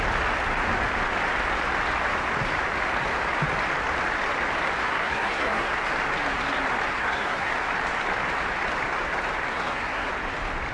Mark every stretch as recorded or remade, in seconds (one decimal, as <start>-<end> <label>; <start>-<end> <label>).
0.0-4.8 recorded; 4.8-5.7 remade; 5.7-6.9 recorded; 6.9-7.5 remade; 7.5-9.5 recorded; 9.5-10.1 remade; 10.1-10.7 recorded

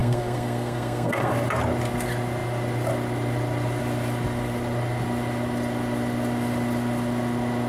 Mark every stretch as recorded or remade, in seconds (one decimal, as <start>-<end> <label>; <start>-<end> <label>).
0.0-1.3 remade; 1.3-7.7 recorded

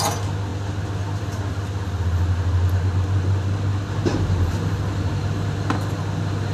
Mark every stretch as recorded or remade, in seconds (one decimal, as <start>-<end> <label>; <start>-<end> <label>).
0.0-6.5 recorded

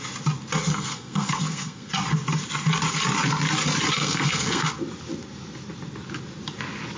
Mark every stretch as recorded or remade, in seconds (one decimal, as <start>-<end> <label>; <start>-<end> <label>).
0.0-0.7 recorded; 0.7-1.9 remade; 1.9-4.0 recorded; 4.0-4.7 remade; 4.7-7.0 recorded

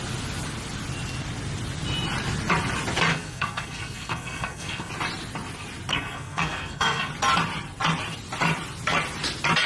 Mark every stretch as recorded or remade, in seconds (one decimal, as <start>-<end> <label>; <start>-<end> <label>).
0.0-3.1 recorded; 3.1-4.9 remade; 4.9-5.9 recorded; 5.9-7.1 remade; 7.1-9.7 recorded